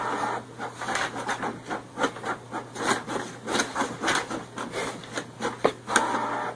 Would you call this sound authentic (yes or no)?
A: yes